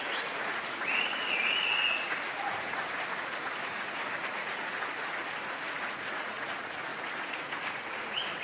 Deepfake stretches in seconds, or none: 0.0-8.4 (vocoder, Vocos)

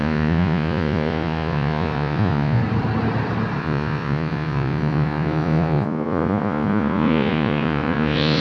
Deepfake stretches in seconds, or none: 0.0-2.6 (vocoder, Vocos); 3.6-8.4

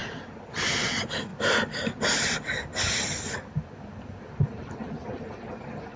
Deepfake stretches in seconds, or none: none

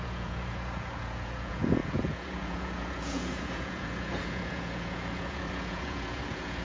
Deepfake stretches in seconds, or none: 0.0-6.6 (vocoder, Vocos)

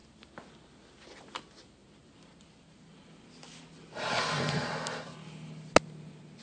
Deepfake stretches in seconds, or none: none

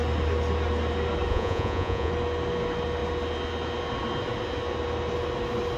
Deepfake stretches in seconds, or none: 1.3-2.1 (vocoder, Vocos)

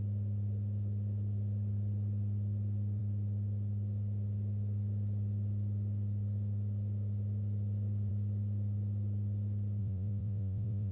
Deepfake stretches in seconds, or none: 9.8-10.9 (vocoder, Vocos)

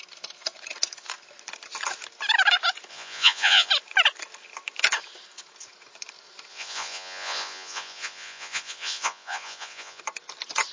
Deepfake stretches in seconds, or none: 2.9-3.7 (vocoder, Vocos); 6.5-10.0